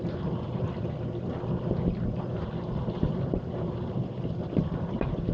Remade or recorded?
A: remade